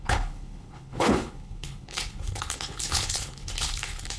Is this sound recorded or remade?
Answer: remade